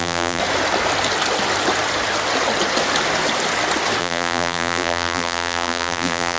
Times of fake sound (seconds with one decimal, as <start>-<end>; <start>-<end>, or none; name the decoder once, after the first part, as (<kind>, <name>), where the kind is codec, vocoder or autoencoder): 0.0-0.4 (vocoder, BigVGAN v2); 4.0-6.4